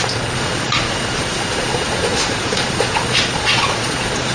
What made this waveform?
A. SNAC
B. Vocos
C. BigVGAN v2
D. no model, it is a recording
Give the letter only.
B